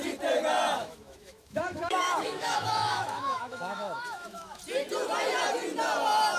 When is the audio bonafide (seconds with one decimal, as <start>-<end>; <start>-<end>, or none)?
0.0-0.8; 4.6-6.4